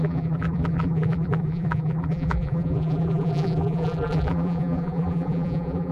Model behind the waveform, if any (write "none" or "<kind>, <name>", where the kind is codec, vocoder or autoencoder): vocoder, BigVGAN v2